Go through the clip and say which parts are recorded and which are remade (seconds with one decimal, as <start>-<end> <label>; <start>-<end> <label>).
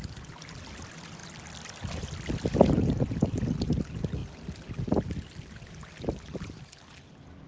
0.0-7.5 recorded